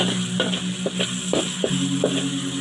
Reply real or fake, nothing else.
real